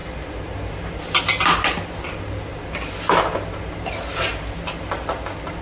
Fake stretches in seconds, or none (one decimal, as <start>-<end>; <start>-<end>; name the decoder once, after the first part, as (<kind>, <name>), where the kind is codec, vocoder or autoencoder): none